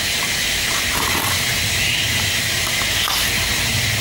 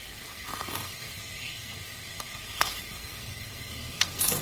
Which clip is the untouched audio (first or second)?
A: first